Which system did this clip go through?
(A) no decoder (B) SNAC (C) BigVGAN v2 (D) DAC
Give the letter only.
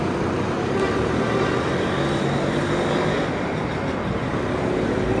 A